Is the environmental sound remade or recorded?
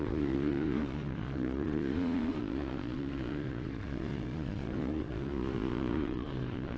remade